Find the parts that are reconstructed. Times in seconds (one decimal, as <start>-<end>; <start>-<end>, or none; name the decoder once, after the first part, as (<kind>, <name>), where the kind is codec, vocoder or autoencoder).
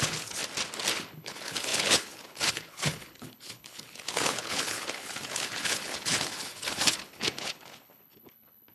0.0-0.4 (codec, HILCodec); 0.9-8.7